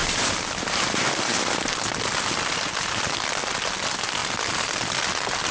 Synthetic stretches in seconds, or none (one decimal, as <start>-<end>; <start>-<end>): none